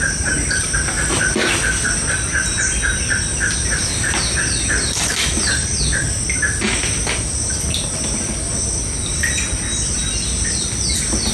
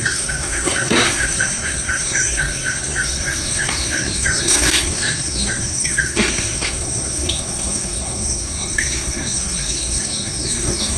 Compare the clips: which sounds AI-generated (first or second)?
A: second